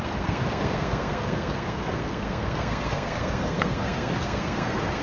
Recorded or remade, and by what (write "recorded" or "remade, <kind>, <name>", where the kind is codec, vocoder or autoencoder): remade, codec, SNAC